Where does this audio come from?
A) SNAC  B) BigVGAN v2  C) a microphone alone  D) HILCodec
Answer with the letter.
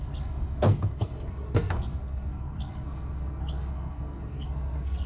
A